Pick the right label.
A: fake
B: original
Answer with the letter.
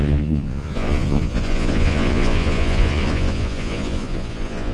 A